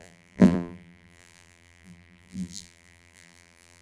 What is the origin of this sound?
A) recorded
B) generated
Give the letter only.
B